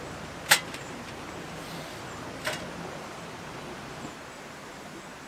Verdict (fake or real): real